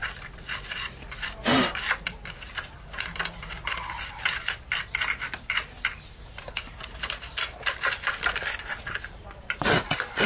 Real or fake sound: real